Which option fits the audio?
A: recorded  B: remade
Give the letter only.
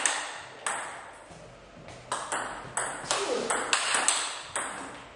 A